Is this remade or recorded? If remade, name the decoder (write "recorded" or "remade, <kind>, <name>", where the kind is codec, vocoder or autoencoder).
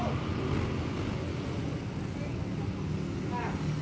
recorded